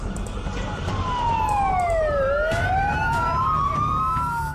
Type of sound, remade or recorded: recorded